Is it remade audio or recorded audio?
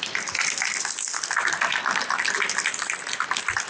recorded